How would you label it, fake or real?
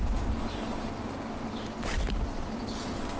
real